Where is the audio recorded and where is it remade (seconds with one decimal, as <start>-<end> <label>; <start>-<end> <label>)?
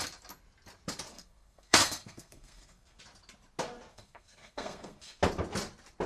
0.0-1.1 recorded; 1.1-3.0 remade; 3.0-3.9 recorded; 3.9-5.2 remade; 5.2-6.1 recorded